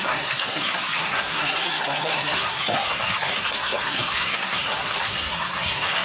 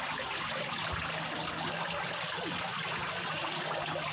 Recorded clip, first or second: second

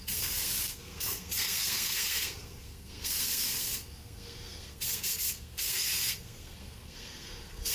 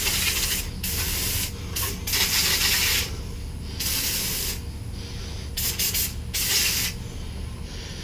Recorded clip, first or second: second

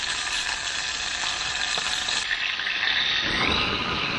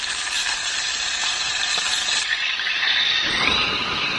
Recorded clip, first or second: first